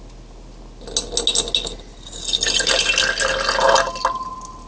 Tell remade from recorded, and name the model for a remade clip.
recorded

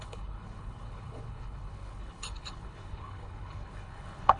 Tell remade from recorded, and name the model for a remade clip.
remade, codec, HILCodec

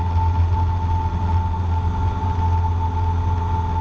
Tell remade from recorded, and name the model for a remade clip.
recorded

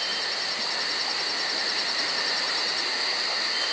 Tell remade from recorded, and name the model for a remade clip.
recorded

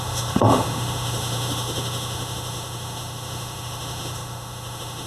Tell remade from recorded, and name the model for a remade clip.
remade, autoencoder, DAC-VAE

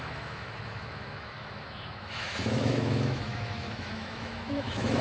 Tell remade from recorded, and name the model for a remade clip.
remade, autoencoder, DAC-VAE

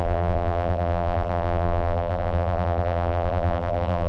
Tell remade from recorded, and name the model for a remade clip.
remade, vocoder, BigVGAN v2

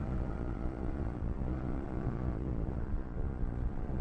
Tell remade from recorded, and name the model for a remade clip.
remade, vocoder, Vocos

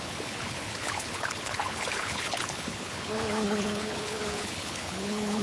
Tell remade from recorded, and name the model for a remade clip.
remade, codec, HILCodec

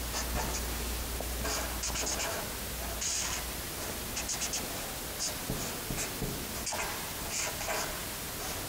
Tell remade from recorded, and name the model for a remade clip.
recorded